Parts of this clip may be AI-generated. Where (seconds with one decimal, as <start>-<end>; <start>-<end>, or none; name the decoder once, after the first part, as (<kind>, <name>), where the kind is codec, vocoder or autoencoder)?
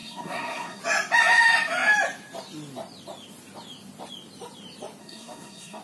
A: 0.0-0.8 (codec, SNAC); 5.0-5.8